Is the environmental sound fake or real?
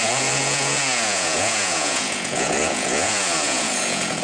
fake